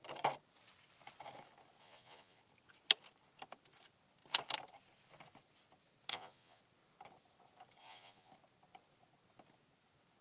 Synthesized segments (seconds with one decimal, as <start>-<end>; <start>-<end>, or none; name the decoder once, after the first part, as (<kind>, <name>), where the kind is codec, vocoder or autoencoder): 1.8-2.4 (vocoder, Vocos); 6.1-6.6; 7.8-8.3